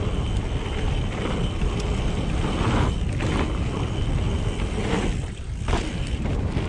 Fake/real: real